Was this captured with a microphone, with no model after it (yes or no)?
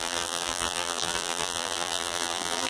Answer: no